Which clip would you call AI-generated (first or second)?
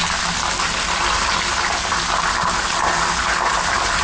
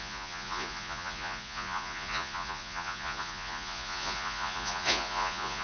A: second